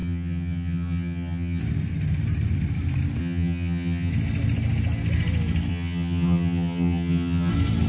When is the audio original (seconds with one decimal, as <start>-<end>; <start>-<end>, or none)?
1.6-3.2; 4.1-5.7; 7.5-7.9